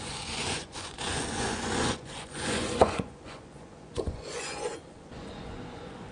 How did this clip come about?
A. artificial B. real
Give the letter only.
A